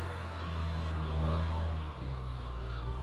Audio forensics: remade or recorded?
remade